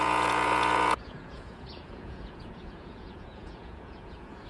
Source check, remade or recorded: remade